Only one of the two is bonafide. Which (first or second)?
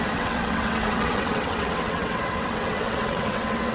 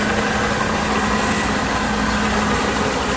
second